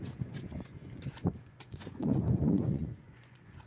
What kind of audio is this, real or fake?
fake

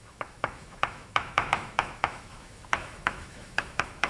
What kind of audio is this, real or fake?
fake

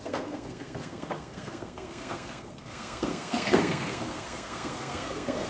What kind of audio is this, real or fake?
fake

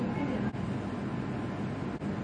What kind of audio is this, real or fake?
real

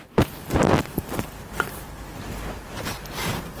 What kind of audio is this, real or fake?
real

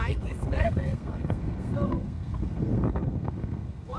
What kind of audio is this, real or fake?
fake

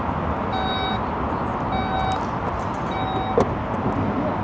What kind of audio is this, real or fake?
real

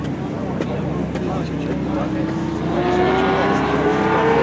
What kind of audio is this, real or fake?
real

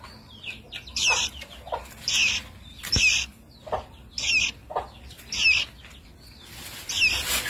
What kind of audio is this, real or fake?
real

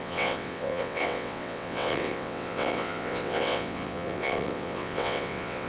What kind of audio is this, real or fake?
fake